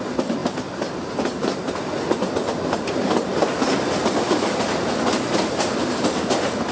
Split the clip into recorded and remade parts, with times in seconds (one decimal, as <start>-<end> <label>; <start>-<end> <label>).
0.0-6.7 recorded